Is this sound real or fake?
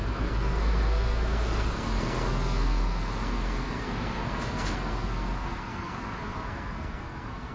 fake